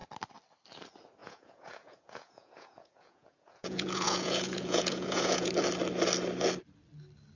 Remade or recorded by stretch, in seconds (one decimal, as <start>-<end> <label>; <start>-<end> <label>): 0.0-1.2 recorded; 1.2-5.5 remade; 5.5-7.4 recorded